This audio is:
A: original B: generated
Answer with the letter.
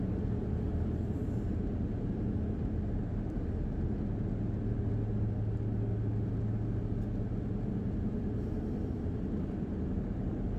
A